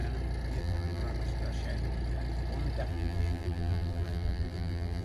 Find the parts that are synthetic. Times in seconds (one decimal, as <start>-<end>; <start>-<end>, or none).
0.6-1.0; 2.9-5.0